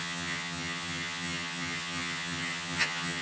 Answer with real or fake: fake